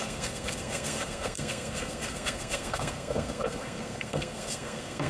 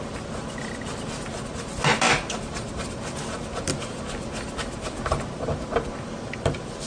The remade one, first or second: first